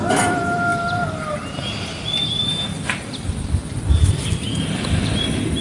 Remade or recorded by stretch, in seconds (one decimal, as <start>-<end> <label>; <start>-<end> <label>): 0.0-5.6 recorded